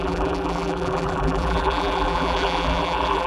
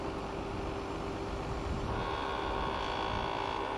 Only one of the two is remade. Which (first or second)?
first